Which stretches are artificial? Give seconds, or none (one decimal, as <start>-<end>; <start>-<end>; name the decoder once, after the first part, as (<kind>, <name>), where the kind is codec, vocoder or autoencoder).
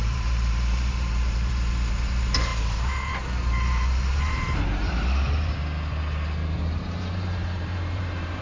0.0-5.6 (vocoder, BigVGAN v2); 6.8-8.4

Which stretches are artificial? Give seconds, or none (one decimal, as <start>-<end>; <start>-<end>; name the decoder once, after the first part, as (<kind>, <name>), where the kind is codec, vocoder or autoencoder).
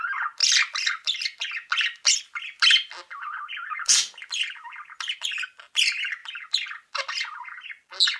none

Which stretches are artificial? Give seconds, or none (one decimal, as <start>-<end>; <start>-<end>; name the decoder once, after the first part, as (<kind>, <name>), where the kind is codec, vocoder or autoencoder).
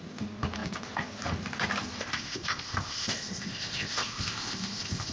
2.0-5.1 (codec, ZipCodec)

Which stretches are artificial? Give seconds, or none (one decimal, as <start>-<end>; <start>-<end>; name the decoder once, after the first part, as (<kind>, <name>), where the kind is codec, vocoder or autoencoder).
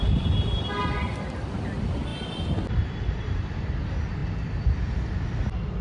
none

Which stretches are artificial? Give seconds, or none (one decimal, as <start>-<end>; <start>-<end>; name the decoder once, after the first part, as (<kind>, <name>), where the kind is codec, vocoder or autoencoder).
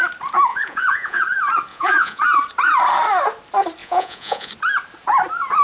0.5-1.2 (vocoder, Vocos); 1.7-2.2; 3.8-4.5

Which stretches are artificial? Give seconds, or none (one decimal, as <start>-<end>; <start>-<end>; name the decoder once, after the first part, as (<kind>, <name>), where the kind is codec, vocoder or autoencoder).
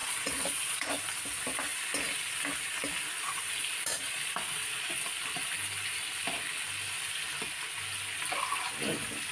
0.0-0.9 (vocoder, Vocos); 3.9-4.9